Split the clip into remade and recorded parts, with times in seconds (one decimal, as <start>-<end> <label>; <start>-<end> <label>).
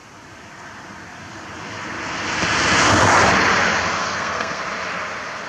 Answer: 0.0-4.0 recorded; 4.0-4.6 remade; 4.6-5.5 recorded